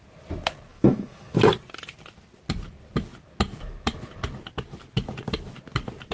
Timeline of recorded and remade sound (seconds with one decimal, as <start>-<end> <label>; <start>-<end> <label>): 0.0-0.7 recorded; 0.7-1.4 remade; 1.4-6.1 recorded